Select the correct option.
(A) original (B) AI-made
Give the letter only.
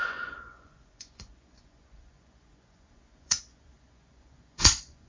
B